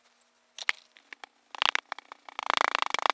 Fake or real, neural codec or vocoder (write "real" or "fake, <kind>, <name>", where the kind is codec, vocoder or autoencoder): real